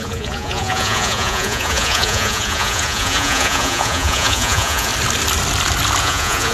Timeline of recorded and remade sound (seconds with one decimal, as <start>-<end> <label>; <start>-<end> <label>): 0.0-4.9 remade; 4.9-6.0 recorded; 6.0-6.5 remade